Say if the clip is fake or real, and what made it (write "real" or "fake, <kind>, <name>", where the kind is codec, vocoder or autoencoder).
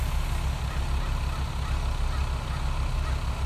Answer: real